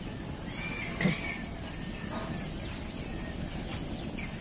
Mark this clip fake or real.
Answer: real